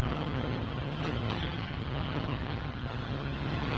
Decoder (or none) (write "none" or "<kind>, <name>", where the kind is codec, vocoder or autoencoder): vocoder, HiFi-GAN